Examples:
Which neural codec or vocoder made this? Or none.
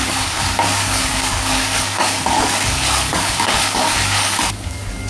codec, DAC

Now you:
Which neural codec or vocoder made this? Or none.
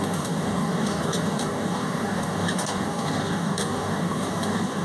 codec, DAC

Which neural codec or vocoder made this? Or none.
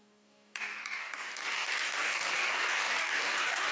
codec, DAC